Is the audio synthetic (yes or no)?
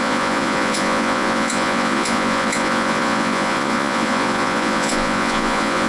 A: yes